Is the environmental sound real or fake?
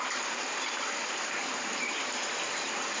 fake